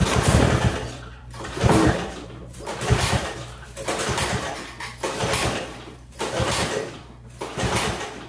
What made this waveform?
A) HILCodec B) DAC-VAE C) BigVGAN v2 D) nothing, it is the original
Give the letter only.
C